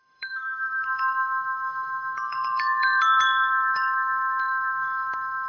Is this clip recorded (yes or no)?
no